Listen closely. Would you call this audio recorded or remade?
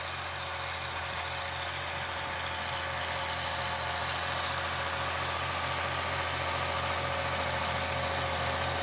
recorded